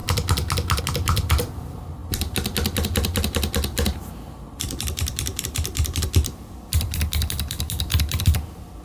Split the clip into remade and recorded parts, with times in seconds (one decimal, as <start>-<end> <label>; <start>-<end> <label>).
0.0-0.8 recorded; 0.8-8.8 remade